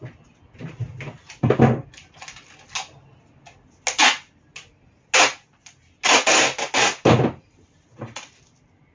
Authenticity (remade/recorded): recorded